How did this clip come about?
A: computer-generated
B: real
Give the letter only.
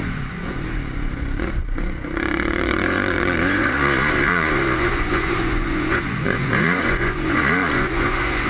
A